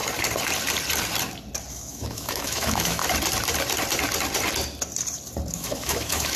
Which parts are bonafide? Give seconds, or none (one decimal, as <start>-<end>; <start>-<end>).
0.0-1.7; 3.0-5.5